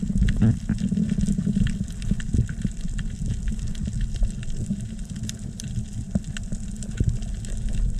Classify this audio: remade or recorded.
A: recorded